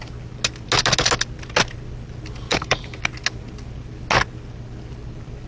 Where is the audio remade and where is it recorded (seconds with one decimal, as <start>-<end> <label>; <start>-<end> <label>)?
0.0-2.5 recorded; 2.5-3.0 remade; 3.0-5.5 recorded